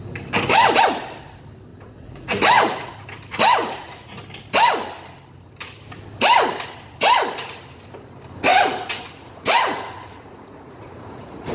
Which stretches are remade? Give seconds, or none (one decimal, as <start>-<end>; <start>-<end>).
1.7-2.9; 3.6-4.2; 8.5-11.5